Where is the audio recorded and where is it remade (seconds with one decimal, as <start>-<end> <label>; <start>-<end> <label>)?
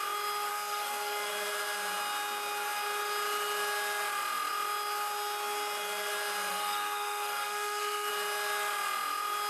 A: 0.0-0.5 recorded; 0.5-1.3 remade; 1.3-6.5 recorded; 6.5-8.1 remade; 8.1-9.5 recorded